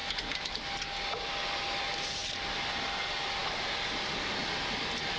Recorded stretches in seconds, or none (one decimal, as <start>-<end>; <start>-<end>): 0.0-5.2